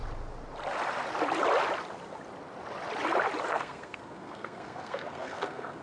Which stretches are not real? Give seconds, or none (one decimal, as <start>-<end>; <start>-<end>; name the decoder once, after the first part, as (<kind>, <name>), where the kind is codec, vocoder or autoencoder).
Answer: 3.5-5.8 (codec, SNAC)